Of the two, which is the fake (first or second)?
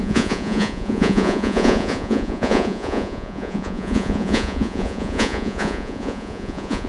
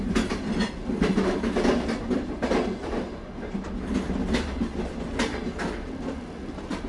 first